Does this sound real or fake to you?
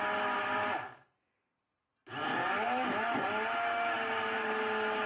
real